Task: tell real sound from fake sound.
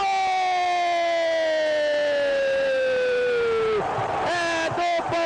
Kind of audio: real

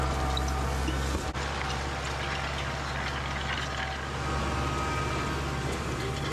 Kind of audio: real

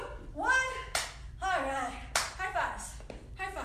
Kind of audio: real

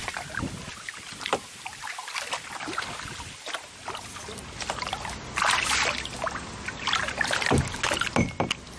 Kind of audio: real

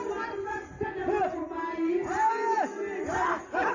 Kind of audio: real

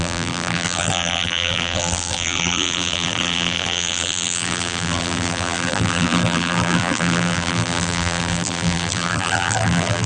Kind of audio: fake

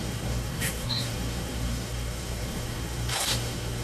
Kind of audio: fake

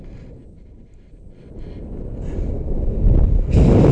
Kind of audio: real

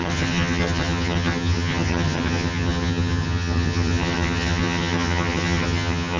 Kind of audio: fake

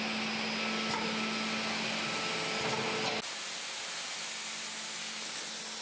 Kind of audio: real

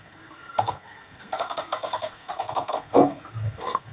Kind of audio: fake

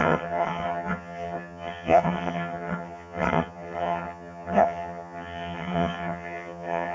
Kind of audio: fake